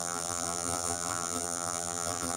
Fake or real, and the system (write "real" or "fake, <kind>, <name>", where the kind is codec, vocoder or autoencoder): fake, vocoder, BigVGAN v2